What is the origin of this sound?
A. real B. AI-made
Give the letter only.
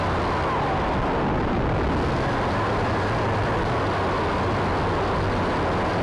A